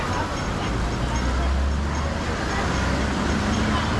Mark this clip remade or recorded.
recorded